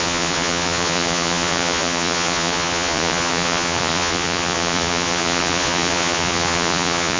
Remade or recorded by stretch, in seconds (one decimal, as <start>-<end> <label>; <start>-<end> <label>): 0.0-7.2 remade